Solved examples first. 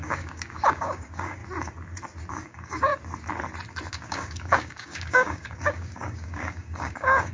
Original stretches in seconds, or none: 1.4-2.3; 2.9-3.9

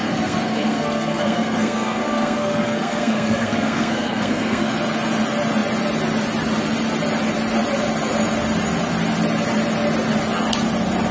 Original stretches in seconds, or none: 4.7-11.1

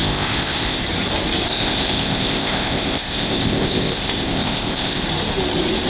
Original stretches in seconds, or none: 0.8-1.5; 5.0-5.9

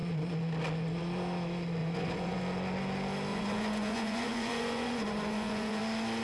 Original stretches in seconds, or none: 0.0-1.8; 2.4-3.3; 5.8-6.2

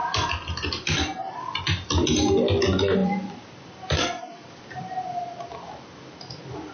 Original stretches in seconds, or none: 1.6-3.0; 4.8-6.7